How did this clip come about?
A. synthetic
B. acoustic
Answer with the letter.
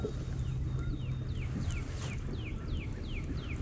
B